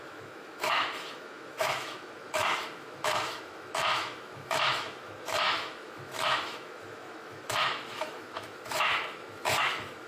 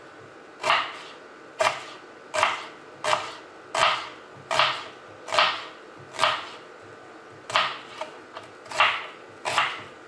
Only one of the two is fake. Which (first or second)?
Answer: first